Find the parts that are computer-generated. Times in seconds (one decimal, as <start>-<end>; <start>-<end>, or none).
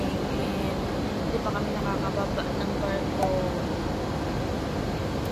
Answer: none